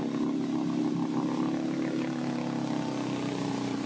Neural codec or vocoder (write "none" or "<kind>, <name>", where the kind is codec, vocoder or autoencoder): none